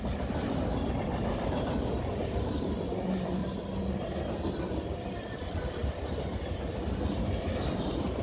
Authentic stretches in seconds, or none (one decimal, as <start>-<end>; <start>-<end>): 3.4-4.0; 5.8-8.2